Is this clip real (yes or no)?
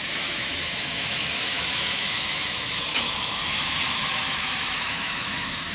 no